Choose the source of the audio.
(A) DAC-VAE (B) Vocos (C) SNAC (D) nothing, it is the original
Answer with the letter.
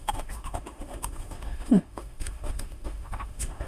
A